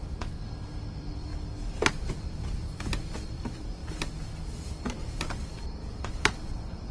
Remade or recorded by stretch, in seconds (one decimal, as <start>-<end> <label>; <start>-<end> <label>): 0.0-1.3 remade; 1.3-1.9 recorded; 1.9-3.8 remade; 3.8-5.4 recorded; 5.4-6.9 remade